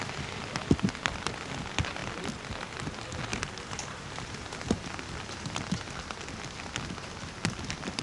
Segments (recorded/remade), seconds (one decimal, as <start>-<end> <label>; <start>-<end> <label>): 0.0-8.0 recorded

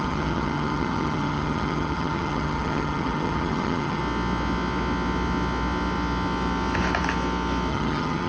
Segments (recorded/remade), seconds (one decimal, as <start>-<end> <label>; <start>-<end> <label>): 0.0-4.0 remade; 4.0-7.7 recorded; 7.7-8.3 remade